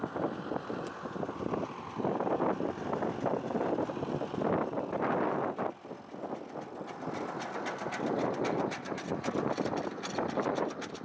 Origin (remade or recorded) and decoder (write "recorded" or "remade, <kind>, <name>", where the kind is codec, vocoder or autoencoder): recorded